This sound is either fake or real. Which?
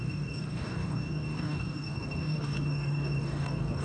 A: fake